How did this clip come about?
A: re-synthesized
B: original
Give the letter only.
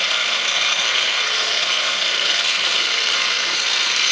A